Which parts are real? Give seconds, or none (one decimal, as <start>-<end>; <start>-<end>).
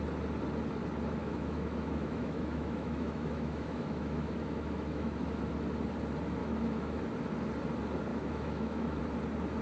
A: 0.0-1.2; 5.4-6.4; 7.0-8.1; 9.0-9.6